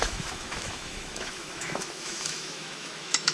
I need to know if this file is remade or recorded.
remade